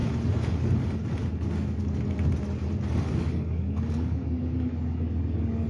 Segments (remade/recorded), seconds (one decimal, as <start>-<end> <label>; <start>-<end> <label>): 0.0-3.2 recorded; 3.2-5.7 remade